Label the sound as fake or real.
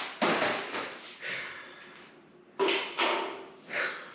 real